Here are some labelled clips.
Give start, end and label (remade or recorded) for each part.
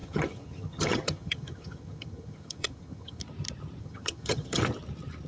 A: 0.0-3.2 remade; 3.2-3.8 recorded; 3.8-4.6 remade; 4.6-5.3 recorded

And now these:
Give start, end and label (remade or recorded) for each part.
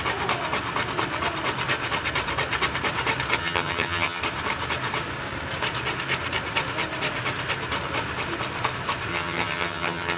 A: 0.0-3.4 recorded; 3.4-4.2 remade; 4.2-9.1 recorded; 9.1-10.2 remade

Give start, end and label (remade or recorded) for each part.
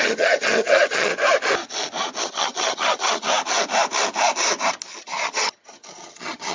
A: 0.0-1.1 remade; 1.1-2.2 recorded; 2.2-3.3 remade; 3.3-5.0 recorded; 5.0-6.5 remade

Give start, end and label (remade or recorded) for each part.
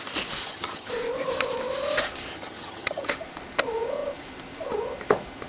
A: 0.0-0.4 recorded; 0.4-0.9 remade; 0.9-2.3 recorded; 2.3-3.1 remade; 3.1-5.5 recorded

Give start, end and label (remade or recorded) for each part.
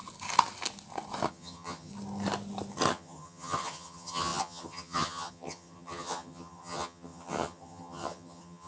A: 0.0-1.3 recorded; 1.3-1.9 remade; 1.9-2.9 recorded; 2.9-8.7 remade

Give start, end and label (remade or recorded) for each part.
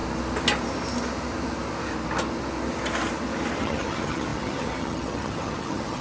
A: 0.0-3.6 recorded; 3.6-6.0 remade